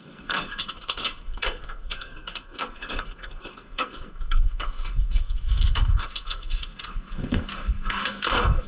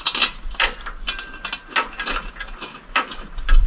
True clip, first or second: second